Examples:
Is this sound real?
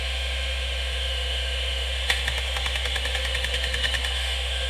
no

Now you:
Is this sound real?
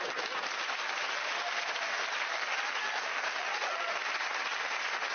yes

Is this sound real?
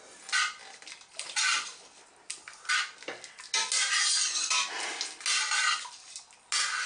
yes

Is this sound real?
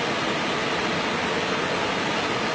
yes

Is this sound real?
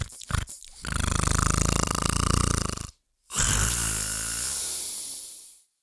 yes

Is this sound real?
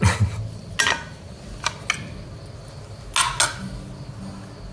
yes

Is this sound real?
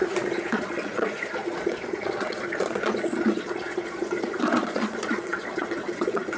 no